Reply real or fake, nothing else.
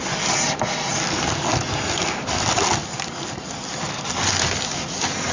real